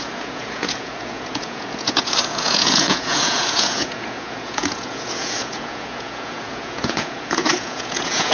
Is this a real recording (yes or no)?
no